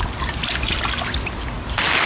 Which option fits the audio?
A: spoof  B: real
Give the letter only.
B